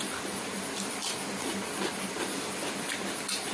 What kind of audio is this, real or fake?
real